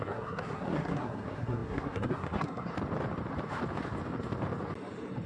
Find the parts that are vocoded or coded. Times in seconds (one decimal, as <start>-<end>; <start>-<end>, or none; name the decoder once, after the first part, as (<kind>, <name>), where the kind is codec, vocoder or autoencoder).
0.0-2.7 (codec, SNAC)